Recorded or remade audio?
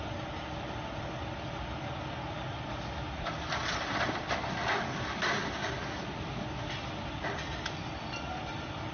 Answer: recorded